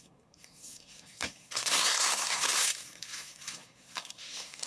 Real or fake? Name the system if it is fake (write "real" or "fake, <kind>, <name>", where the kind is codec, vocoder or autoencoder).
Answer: fake, codec, SNAC